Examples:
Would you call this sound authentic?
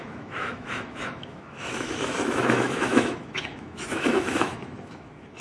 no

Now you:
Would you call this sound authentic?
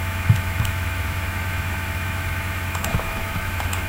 no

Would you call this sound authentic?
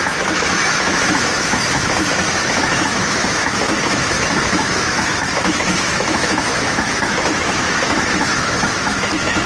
no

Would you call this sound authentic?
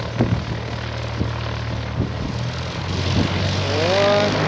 yes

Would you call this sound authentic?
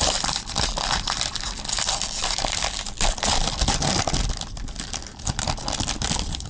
yes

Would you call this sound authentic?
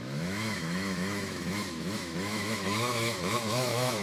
no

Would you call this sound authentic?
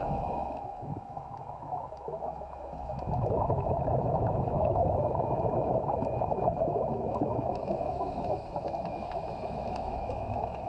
no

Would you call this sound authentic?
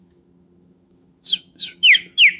no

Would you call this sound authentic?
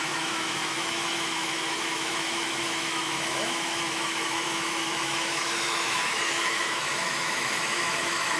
no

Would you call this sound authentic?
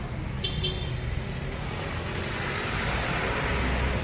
yes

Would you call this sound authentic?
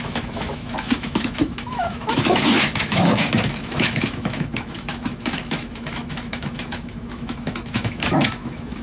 no